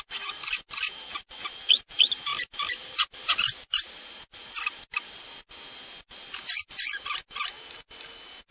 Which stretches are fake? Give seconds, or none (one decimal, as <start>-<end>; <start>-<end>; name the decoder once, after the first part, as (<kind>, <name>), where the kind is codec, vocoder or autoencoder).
2.3-5.2 (vocoder, BigVGAN v2)